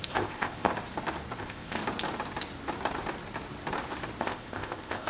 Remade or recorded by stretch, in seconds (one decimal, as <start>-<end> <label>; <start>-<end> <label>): 0.0-0.7 remade; 0.7-1.4 recorded; 1.4-1.8 remade; 1.8-4.2 recorded; 4.2-5.1 remade